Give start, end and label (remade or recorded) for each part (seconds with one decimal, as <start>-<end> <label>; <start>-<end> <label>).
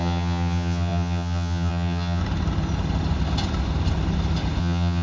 0.0-2.2 remade; 2.2-4.6 recorded; 4.6-5.0 remade